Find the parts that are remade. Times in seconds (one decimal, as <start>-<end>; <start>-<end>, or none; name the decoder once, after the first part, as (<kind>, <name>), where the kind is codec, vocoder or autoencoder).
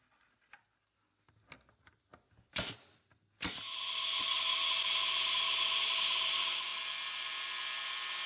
none